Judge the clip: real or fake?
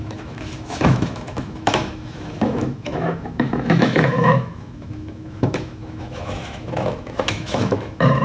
fake